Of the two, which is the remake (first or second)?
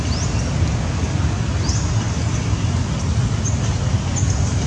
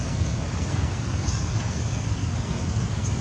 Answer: second